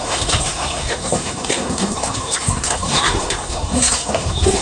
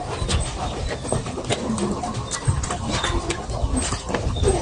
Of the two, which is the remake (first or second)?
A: first